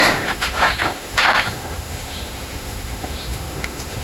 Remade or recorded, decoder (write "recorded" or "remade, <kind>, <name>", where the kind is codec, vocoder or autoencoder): remade, autoencoder, DAC-VAE